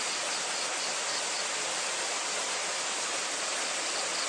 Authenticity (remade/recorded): recorded